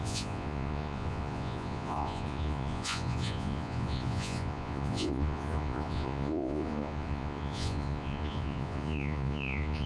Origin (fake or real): fake